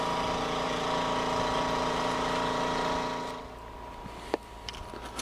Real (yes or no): yes